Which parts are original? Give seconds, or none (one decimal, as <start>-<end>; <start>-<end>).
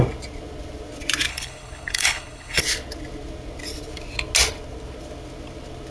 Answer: 0.0-1.3; 2.6-5.9